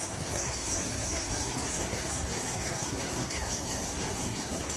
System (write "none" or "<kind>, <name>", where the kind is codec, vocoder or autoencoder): codec, SNAC